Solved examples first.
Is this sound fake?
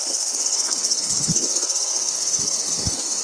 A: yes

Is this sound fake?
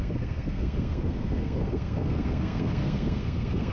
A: yes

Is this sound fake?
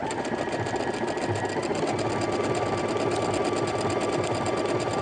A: no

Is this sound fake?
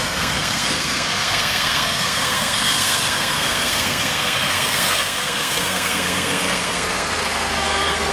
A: yes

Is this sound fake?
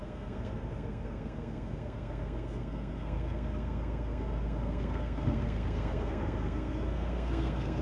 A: yes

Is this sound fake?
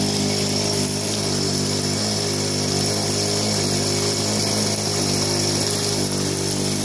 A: no